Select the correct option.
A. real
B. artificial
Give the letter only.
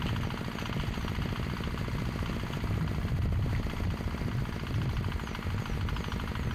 A